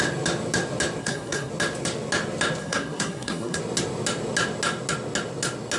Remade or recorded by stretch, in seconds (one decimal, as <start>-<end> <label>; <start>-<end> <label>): 0.0-1.0 recorded; 1.0-1.5 remade; 1.5-2.6 recorded; 2.6-3.6 remade; 3.6-5.8 recorded

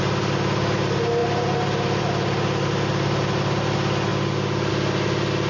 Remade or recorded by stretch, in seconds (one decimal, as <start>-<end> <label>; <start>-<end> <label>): 0.0-5.5 recorded

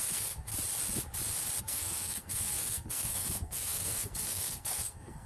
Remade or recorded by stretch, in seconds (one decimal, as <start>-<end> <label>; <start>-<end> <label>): 0.0-0.5 remade; 0.5-1.6 recorded; 1.6-5.3 remade

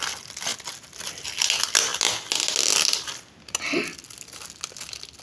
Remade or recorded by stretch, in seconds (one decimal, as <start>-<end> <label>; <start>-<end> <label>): 0.0-5.2 recorded

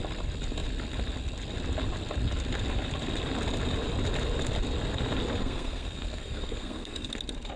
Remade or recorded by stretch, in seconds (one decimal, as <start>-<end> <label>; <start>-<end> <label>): 0.0-5.4 recorded; 5.4-7.1 remade; 7.1-7.6 recorded